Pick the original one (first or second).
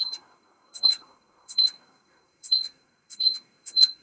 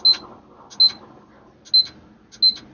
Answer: second